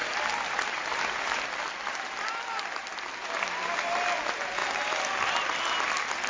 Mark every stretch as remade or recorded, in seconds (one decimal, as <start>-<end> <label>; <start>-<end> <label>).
0.0-2.6 remade; 2.6-6.3 recorded